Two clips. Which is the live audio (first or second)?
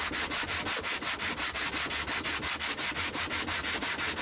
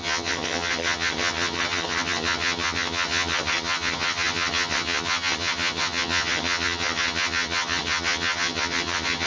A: first